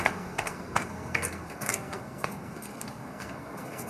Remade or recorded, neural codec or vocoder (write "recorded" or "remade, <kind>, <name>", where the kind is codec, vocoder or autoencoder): remade, codec, SNAC